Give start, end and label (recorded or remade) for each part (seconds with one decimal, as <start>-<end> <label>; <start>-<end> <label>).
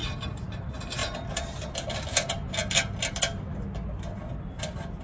0.0-0.6 remade; 0.6-1.0 recorded; 1.0-2.0 remade; 2.0-5.0 recorded